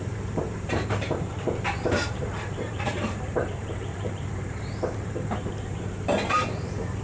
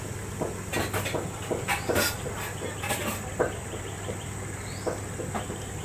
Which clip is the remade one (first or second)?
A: first